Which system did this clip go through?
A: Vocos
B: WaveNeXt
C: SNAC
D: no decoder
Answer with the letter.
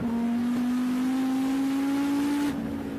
D